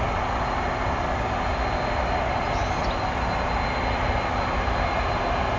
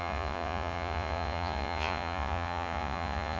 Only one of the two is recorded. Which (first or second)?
first